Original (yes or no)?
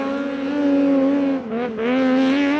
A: yes